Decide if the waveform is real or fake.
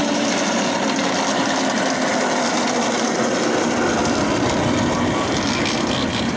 real